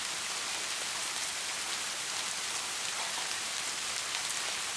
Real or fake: real